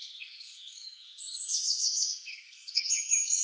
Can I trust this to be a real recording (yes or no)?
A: no